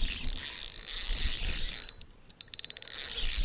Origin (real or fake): real